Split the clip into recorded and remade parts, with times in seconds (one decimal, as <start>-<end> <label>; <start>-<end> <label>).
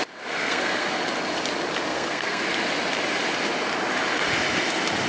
0.0-0.4 recorded; 0.4-1.0 remade; 1.0-1.9 recorded; 1.9-2.4 remade; 2.4-5.1 recorded